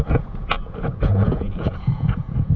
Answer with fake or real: fake